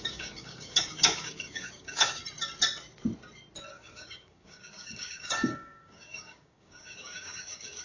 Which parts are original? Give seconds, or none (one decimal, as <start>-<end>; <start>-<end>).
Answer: 2.2-3.7